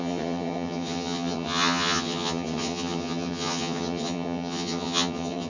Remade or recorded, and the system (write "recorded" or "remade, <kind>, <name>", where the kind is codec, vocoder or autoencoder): remade, vocoder, HiFi-GAN